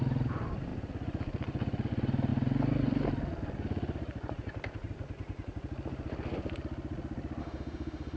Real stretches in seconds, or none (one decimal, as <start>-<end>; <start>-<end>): 0.0-7.4